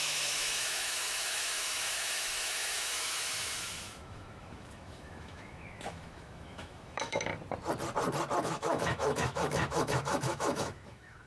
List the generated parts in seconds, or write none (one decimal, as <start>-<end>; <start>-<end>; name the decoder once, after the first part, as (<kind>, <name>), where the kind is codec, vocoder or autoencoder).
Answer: 0.0-7.3 (autoencoder, DAC-VAE); 8.4-11.3